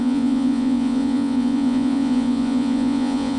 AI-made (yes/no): yes